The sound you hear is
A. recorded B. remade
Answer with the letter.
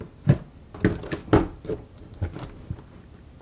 A